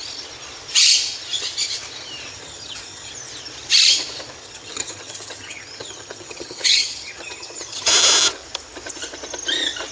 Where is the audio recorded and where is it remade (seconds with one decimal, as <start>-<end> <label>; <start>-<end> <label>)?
0.0-2.3 recorded; 2.3-3.1 remade; 3.1-4.4 recorded; 4.4-7.9 remade; 7.9-9.9 recorded